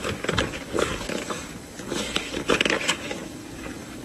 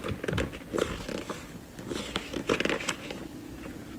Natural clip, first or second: second